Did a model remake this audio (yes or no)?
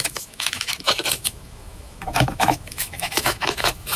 yes